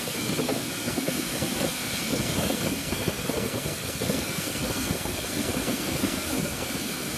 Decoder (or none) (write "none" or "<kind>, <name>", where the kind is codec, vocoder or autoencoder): codec, SNAC